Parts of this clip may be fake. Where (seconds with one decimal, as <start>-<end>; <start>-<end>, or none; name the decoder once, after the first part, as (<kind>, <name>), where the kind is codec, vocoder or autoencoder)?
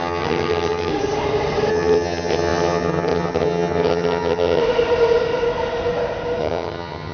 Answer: 0.0-0.9 (vocoder, HiFi-GAN); 1.7-4.6; 6.4-7.1